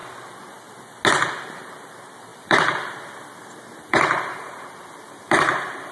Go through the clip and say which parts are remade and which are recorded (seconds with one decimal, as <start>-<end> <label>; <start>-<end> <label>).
0.0-2.3 recorded; 2.3-5.9 remade